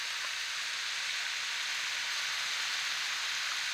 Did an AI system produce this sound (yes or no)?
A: no